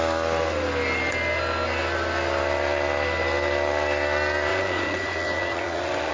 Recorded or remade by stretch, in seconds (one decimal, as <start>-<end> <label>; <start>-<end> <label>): 0.0-4.5 recorded; 4.5-6.1 remade